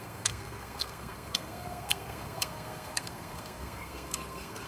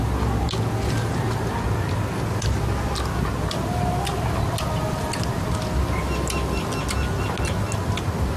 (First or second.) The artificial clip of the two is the first